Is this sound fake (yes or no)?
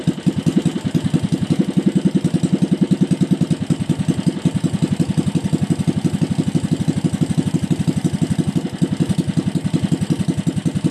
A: no